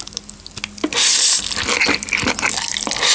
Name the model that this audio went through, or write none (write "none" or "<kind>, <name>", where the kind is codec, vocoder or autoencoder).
none